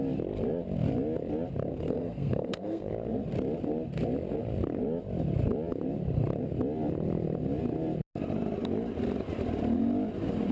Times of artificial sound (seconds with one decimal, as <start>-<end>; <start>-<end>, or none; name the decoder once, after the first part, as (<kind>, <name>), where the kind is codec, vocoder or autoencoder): 1.7-2.9 (codec, SNAC)